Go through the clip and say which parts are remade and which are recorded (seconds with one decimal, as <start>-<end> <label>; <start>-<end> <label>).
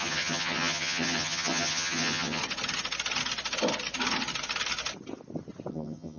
0.0-2.4 remade; 2.4-5.7 recorded; 5.7-6.2 remade